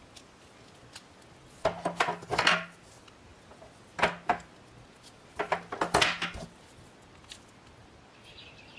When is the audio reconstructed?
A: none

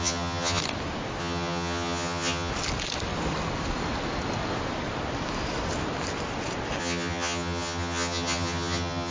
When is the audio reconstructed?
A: 0.0-0.6 (vocoder, HiFi-GAN); 1.2-2.5; 6.8-9.1